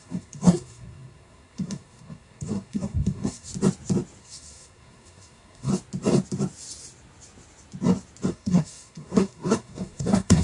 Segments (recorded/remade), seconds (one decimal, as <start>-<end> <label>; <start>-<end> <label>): 0.0-3.5 remade; 3.5-4.2 recorded; 4.2-5.7 remade; 5.7-8.3 recorded; 8.3-10.4 remade